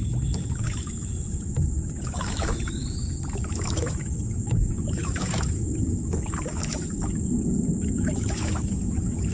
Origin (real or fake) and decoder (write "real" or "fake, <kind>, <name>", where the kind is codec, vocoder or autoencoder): fake, autoencoder, DAC-VAE